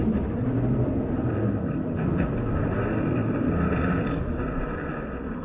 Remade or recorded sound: recorded